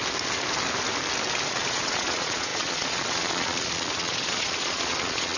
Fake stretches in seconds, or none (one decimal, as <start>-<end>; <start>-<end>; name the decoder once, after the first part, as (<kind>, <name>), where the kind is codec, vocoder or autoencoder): 1.5-5.4 (vocoder, Vocos)